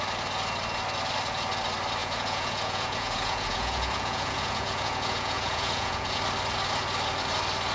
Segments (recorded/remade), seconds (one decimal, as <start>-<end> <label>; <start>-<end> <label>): 0.0-2.0 recorded; 2.0-6.2 remade; 6.2-7.7 recorded